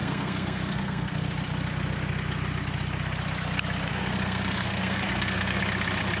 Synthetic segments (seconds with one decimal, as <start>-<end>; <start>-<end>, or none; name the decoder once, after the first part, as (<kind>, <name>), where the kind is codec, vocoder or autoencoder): 0.0-1.3 (codec, SNAC); 3.9-5.6